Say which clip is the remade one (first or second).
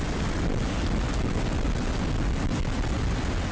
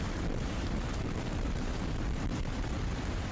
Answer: second